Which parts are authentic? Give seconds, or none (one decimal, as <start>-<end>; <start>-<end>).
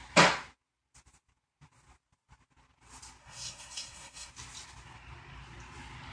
0.0-3.2; 4.3-6.1